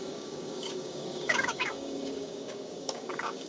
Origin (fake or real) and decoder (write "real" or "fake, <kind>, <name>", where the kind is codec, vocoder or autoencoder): fake, codec, DAC